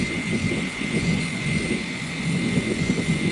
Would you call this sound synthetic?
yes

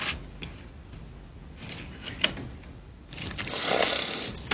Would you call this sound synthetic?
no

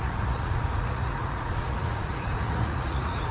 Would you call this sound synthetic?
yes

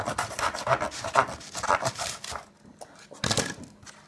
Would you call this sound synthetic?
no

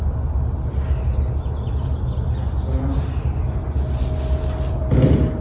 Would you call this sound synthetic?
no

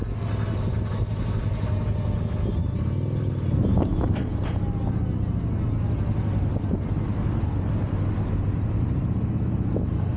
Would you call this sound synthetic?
no